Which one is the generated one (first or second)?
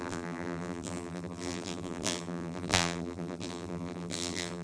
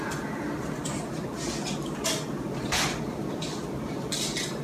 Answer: first